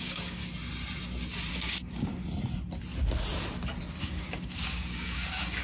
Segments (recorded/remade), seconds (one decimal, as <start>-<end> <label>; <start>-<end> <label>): 0.0-0.4 remade; 0.4-1.5 recorded; 1.5-2.1 remade; 2.1-4.0 recorded; 4.0-5.6 remade